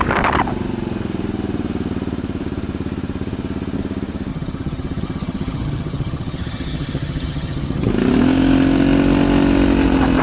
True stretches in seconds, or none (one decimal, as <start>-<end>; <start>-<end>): 0.0-4.3; 7.9-10.2